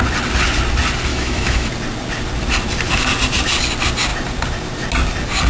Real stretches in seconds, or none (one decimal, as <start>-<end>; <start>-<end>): 0.0-1.1; 1.7-5.5